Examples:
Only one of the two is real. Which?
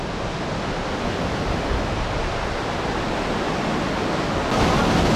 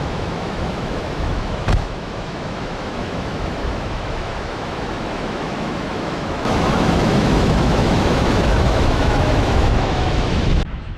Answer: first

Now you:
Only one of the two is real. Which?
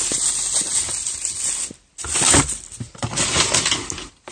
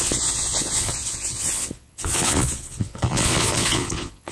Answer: first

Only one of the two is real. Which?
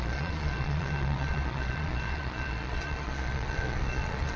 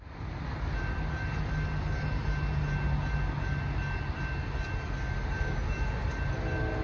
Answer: second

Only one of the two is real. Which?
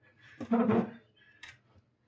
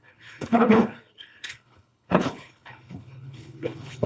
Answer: first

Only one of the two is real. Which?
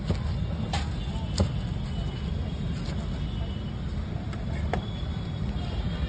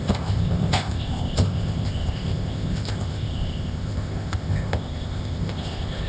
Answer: first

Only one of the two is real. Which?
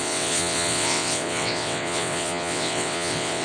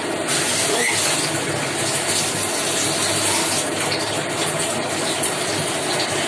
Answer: second